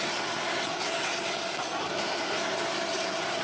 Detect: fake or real real